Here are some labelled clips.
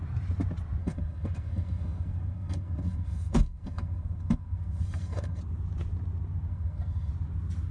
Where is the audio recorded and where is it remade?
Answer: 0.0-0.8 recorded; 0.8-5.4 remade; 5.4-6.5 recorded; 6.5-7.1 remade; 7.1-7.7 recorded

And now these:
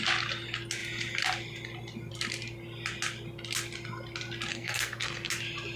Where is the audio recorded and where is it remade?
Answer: 0.0-4.5 recorded; 4.5-5.3 remade; 5.3-5.8 recorded

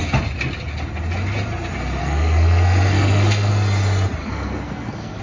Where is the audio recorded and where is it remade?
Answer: 0.0-2.0 recorded; 2.0-3.5 remade; 3.5-4.2 recorded; 4.2-5.2 remade

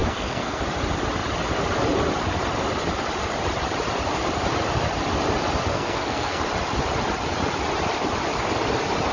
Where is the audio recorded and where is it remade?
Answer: 0.0-0.6 remade; 0.6-5.7 recorded; 5.7-6.4 remade; 6.4-9.1 recorded

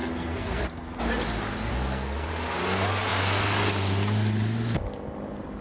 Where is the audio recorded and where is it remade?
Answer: 0.0-0.6 remade; 0.6-1.7 recorded; 1.7-2.3 remade; 2.3-5.6 recorded